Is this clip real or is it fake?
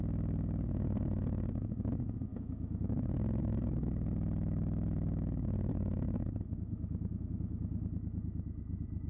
fake